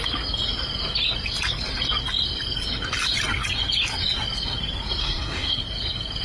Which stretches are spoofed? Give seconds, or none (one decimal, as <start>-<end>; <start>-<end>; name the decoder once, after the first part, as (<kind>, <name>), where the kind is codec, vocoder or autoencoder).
5.0-5.6 (codec, SNAC)